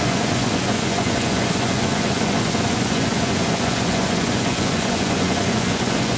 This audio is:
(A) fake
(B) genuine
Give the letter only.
A